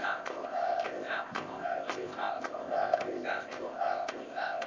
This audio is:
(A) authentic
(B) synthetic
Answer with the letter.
B